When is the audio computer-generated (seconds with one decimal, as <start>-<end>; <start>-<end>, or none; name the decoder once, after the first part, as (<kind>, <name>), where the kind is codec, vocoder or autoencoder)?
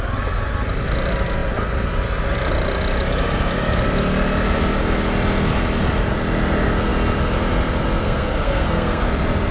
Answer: 8.0-9.0 (codec, SNAC)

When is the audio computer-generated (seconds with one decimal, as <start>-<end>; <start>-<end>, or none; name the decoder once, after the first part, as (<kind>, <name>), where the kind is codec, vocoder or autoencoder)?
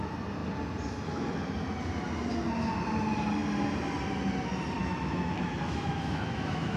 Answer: 4.8-6.8 (autoencoder, DAC-VAE)